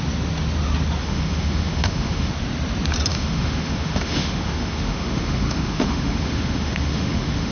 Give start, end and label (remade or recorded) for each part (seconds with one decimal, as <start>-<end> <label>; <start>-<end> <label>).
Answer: 0.0-1.0 recorded; 1.0-2.3 remade; 2.3-3.1 recorded; 3.1-7.5 remade